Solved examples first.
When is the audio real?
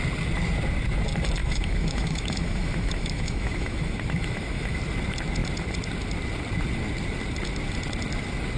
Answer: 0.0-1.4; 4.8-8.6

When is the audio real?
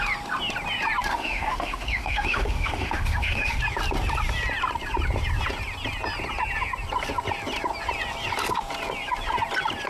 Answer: 0.0-1.1; 3.6-9.9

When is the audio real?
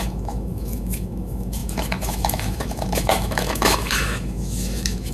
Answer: none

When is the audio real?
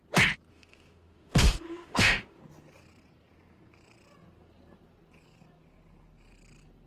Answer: 0.0-0.5; 2.4-6.9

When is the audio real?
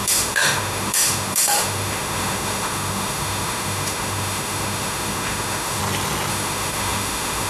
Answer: 5.8-6.3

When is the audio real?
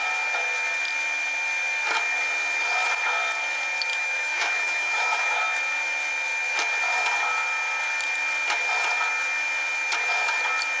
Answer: 0.0-3.9; 5.4-10.8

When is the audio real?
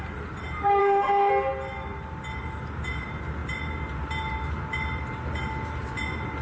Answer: 0.0-0.8; 1.3-6.4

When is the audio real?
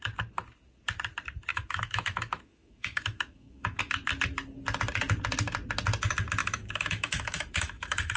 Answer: 0.0-1.5; 3.8-6.4